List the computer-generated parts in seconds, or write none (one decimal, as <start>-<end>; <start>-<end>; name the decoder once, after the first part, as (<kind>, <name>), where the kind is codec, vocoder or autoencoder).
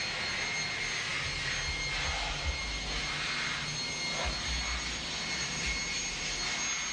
none